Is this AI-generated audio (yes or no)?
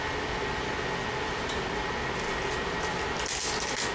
no